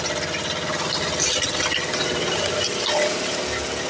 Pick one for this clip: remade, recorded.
recorded